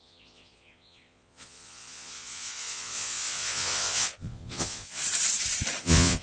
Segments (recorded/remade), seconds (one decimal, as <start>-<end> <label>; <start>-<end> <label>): 0.0-5.0 remade; 5.0-5.8 recorded; 5.8-6.2 remade